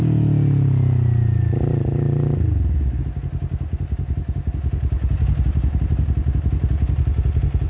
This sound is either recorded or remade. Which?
recorded